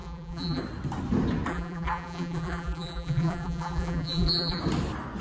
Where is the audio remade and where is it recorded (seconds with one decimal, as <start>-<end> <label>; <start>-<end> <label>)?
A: 0.0-0.6 remade; 0.6-1.5 recorded; 1.5-4.6 remade; 4.6-5.2 recorded